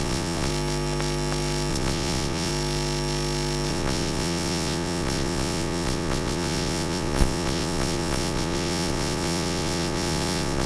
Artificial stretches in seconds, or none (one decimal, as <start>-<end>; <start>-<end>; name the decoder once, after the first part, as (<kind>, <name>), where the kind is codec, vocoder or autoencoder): 0.0-0.5 (vocoder, Vocos); 1.7-2.5; 3.7-10.7

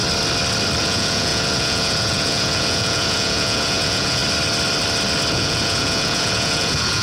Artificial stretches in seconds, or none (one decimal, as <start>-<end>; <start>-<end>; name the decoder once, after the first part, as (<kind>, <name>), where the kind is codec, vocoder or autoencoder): 0.8-4.2 (vocoder, Vocos); 5.3-7.0

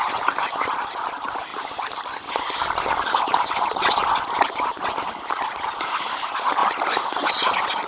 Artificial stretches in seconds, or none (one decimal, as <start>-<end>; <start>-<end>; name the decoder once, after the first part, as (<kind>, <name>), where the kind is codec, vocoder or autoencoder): none

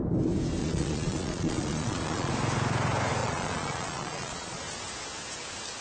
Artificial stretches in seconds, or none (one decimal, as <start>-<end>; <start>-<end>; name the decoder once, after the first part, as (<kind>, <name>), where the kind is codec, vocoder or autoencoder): 0.6-2.3 (vocoder, Vocos); 3.2-4.6